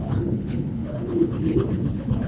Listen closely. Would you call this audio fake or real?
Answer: fake